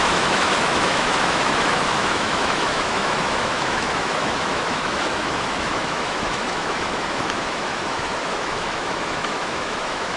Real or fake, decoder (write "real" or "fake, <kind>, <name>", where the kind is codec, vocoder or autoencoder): fake, autoencoder, DAC-VAE